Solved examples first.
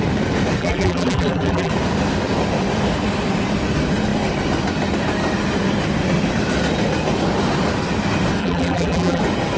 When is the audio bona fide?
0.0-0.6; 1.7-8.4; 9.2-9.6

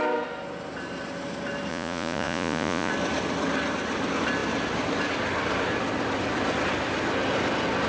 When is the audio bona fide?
0.0-1.7; 2.9-7.9

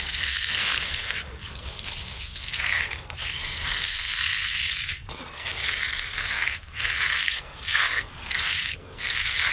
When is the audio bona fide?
none